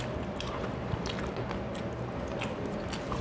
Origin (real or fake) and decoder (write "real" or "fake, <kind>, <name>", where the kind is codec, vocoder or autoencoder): real